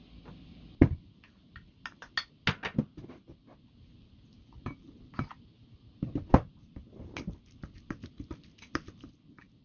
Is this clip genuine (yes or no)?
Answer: yes